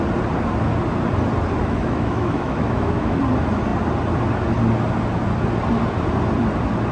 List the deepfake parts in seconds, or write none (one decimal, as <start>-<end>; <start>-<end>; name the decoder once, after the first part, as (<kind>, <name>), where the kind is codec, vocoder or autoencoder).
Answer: 1.6-3.2 (autoencoder, DAC-VAE)